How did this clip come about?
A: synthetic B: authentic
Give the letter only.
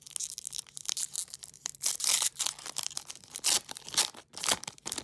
B